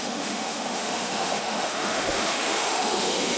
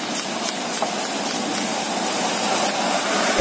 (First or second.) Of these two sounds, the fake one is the first